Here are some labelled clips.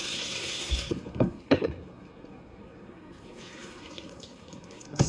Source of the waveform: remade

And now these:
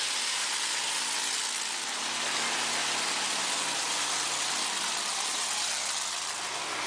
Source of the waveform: recorded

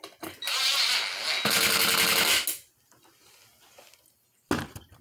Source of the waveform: recorded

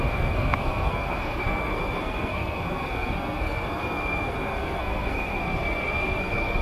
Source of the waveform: remade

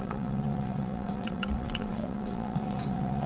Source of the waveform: remade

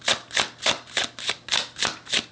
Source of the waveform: recorded